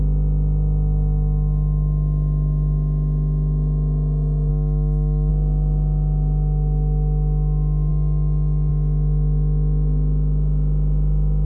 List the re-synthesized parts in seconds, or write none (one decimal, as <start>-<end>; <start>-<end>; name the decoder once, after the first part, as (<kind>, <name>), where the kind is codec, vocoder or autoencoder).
0.0-4.5 (autoencoder, DAC-VAE); 5.3-11.4